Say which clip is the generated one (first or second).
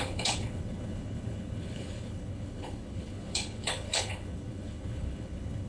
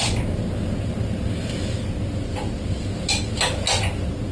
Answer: first